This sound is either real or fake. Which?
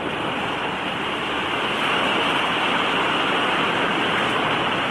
real